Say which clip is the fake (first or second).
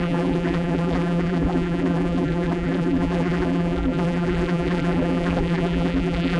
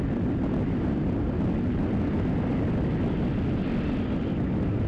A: first